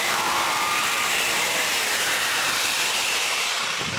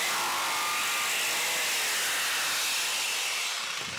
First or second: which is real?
second